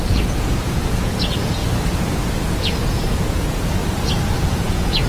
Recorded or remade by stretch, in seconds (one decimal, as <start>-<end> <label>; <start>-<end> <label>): 0.0-1.6 remade; 1.6-2.5 recorded; 2.5-3.8 remade; 3.8-4.4 recorded; 4.4-5.1 remade